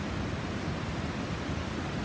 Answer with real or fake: real